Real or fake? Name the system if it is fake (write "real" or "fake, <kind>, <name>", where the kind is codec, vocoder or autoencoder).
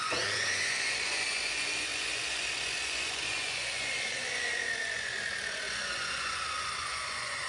fake, vocoder, Vocos